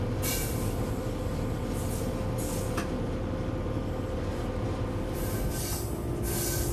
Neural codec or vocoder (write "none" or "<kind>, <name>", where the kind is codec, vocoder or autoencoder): none